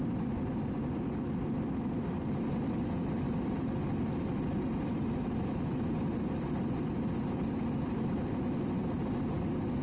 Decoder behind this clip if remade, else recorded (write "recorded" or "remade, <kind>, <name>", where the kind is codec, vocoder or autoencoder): recorded